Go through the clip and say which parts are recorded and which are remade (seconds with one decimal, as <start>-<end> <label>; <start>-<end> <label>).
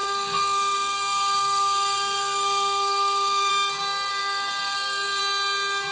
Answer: 0.0-3.5 remade; 3.5-4.1 recorded; 4.1-5.2 remade; 5.2-5.9 recorded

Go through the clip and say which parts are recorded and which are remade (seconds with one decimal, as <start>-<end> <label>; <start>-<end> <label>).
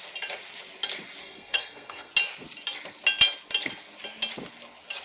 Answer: 0.0-1.2 recorded; 1.2-2.1 remade; 2.1-5.0 recorded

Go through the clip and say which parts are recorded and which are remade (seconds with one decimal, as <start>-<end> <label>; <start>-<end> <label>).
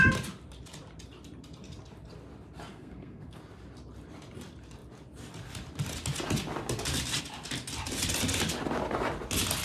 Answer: 0.0-2.7 recorded; 2.7-3.4 remade; 3.4-9.6 recorded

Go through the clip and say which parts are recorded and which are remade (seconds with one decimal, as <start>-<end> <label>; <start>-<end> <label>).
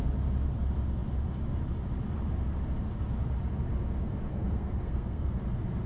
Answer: 0.0-4.3 recorded; 4.3-5.4 remade; 5.4-5.9 recorded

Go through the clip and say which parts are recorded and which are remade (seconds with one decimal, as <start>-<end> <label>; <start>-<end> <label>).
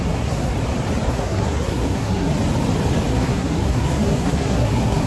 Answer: 0.0-0.5 remade; 0.5-1.1 recorded; 1.1-2.3 remade; 2.3-3.1 recorded; 3.1-5.1 remade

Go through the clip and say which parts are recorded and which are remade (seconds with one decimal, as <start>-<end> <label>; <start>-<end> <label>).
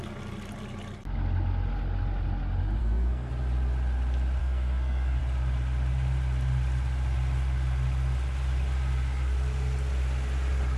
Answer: 0.0-2.8 recorded; 2.8-3.3 remade; 3.3-4.4 recorded; 4.4-5.2 remade; 5.2-10.8 recorded